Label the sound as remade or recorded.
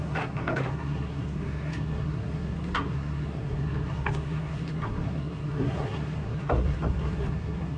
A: remade